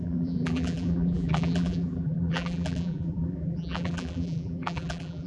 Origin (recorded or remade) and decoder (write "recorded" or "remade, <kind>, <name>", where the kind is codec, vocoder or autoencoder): remade, vocoder, BigVGAN v2